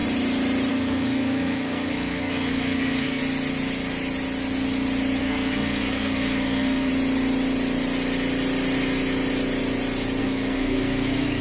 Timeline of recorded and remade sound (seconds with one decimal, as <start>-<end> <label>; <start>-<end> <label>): 0.0-0.7 recorded; 0.7-3.2 remade; 3.2-5.2 recorded; 5.2-6.9 remade; 6.9-10.2 recorded; 10.2-11.4 remade